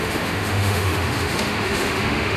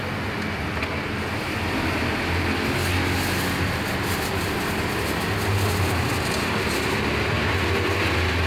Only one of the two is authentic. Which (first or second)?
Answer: second